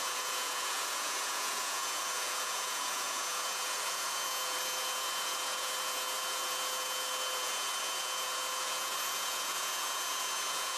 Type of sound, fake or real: fake